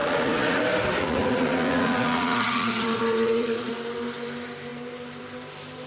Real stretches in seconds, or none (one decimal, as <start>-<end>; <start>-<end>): 0.6-1.0; 3.7-5.9